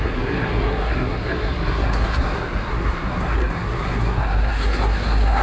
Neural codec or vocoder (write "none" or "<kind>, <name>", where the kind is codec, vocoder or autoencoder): codec, SNAC